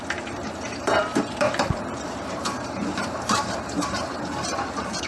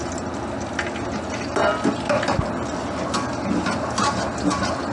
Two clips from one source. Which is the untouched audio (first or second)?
second